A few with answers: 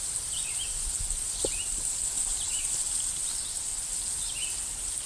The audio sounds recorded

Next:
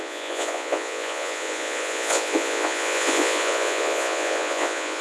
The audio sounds remade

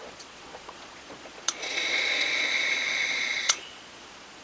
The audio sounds remade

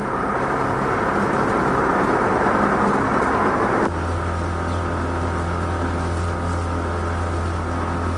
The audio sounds recorded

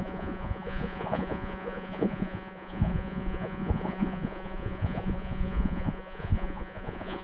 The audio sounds remade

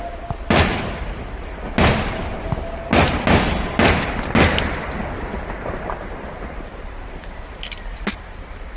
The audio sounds recorded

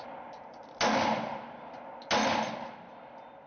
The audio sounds recorded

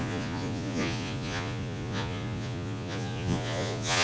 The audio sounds remade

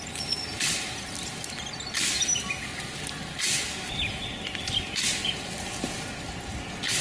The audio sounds recorded